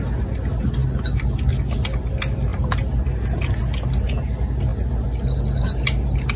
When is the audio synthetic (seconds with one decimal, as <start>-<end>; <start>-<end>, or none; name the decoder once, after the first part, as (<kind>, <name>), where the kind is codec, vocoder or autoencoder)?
none